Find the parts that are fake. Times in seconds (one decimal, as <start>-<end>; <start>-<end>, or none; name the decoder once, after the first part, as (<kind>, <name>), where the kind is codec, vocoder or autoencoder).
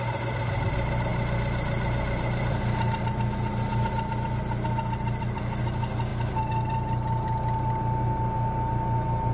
none